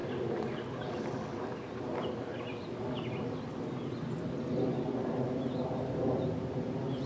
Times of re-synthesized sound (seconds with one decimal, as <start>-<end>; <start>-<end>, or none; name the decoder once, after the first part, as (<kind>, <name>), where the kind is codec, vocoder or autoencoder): none

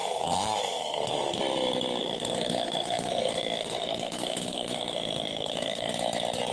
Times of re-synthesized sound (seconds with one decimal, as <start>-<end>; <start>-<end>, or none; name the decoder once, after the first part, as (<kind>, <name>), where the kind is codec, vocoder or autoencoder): 0.0-1.4 (codec, SNAC); 2.0-5.9

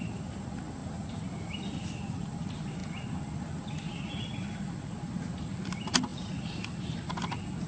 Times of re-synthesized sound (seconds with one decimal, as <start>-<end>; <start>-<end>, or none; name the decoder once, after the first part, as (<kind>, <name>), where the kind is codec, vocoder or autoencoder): none

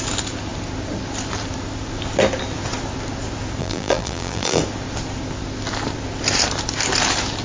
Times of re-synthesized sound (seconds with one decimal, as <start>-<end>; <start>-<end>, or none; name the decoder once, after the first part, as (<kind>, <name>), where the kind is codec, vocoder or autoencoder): 3.6-4.6 (vocoder, BigVGAN v2)

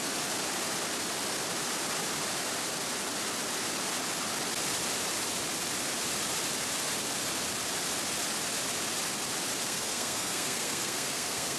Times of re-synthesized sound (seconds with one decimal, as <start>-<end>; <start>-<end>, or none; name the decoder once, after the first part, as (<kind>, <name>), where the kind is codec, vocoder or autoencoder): 9.6-11.6 (codec, SNAC)

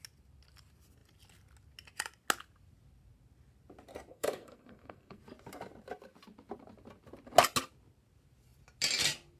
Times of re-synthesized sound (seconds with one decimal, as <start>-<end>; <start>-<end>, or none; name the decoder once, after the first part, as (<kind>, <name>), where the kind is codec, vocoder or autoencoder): 4.1-5.2 (codec, SNAC)

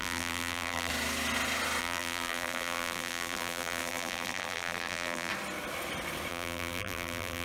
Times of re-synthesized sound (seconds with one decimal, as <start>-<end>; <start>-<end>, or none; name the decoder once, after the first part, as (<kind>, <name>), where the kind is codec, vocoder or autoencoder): 0.0-0.9 (vocoder, BigVGAN v2); 1.8-5.3; 6.3-7.4